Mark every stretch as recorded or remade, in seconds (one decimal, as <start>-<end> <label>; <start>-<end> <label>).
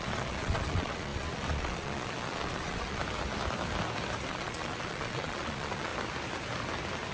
0.0-3.0 remade; 3.0-4.3 recorded; 4.3-5.9 remade; 5.9-7.1 recorded